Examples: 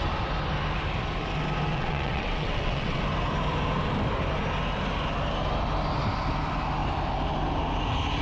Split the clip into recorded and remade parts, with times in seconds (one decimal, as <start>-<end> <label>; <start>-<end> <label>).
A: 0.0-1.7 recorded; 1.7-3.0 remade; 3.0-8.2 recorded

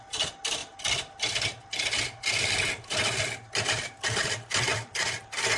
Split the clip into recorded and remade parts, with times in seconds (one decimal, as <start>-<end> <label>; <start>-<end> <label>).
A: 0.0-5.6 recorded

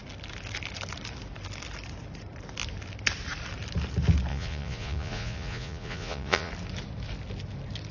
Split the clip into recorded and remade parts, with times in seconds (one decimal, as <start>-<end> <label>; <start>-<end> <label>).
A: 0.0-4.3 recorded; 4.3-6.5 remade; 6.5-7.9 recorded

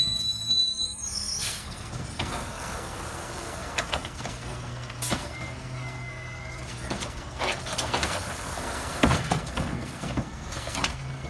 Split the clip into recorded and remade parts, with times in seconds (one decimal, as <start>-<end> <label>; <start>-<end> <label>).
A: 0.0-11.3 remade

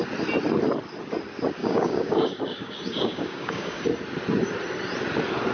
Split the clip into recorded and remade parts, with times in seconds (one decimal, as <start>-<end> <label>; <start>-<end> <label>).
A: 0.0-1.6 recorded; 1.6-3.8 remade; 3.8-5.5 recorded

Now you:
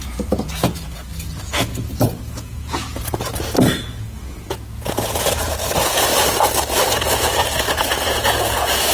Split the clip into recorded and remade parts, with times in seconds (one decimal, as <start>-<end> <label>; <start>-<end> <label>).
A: 0.0-1.1 remade; 1.1-1.7 recorded; 1.7-3.3 remade; 3.3-3.9 recorded; 3.9-6.1 remade; 6.1-6.9 recorded; 6.9-8.9 remade